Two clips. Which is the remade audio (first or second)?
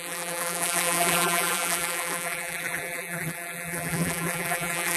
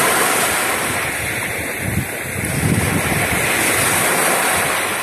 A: first